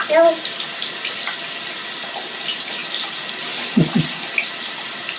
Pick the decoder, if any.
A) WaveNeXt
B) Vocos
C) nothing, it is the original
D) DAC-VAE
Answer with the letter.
C